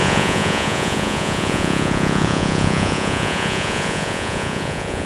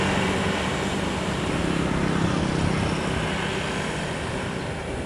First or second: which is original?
second